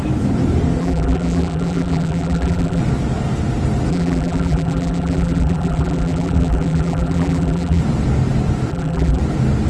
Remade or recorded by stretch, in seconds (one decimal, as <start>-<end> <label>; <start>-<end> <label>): 0.0-0.8 recorded; 0.8-2.8 remade; 2.8-3.9 recorded; 3.9-7.8 remade; 7.8-8.7 recorded; 8.7-9.2 remade; 9.2-9.7 recorded